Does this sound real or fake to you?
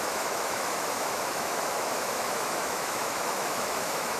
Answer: fake